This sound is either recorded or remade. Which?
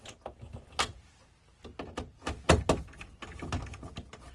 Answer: recorded